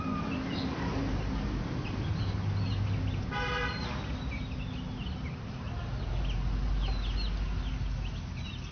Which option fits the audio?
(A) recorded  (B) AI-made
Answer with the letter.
A